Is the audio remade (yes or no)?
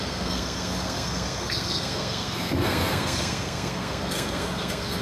yes